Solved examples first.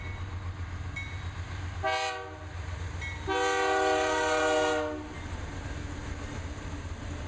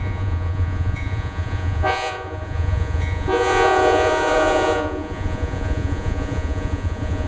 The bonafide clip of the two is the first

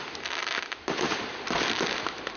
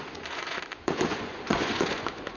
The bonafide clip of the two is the first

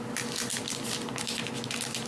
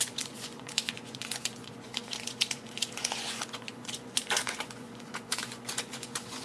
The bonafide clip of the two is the first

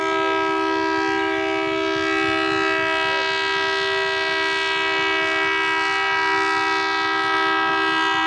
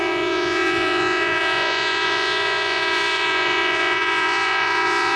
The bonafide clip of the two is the first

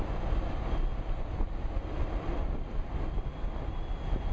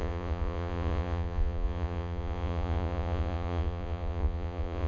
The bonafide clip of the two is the first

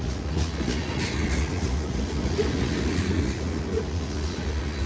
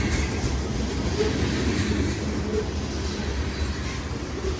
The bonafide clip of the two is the second